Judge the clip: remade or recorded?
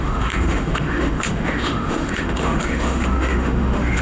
remade